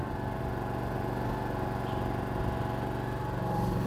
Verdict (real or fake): real